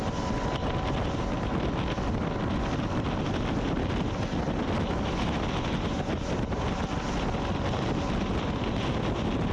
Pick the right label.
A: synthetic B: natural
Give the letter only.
B